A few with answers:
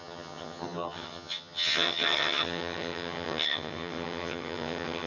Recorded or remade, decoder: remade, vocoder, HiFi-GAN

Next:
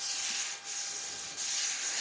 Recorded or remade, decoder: recorded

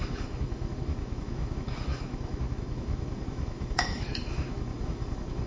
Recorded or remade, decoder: remade, autoencoder, DAC-VAE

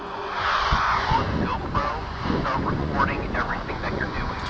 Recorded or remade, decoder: remade, vocoder, Vocos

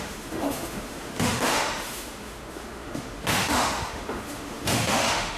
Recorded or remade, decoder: remade, autoencoder, DAC-VAE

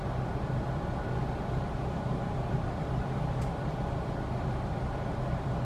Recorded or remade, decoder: remade, vocoder, BigVGAN v2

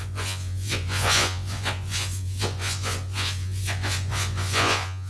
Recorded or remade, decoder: remade, vocoder, Vocos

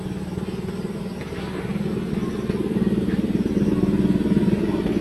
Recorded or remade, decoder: recorded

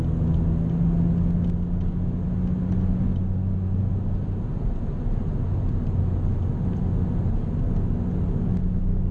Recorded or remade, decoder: recorded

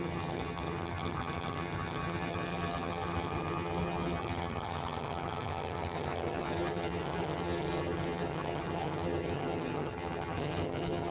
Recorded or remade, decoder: remade, vocoder, HiFi-GAN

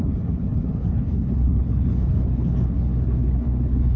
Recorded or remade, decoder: remade, codec, HILCodec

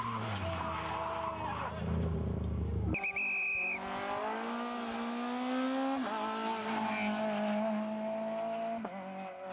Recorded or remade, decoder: recorded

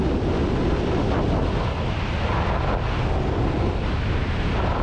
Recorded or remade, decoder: recorded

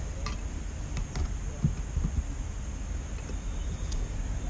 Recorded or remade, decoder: recorded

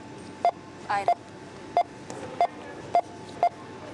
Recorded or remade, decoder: recorded